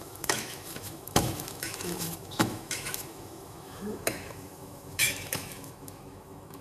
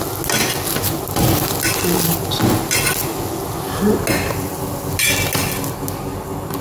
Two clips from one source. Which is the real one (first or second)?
second